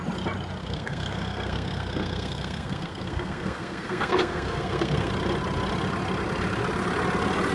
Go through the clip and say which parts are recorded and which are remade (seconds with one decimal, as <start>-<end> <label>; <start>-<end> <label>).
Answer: 0.0-0.6 recorded; 0.6-5.1 remade; 5.1-7.5 recorded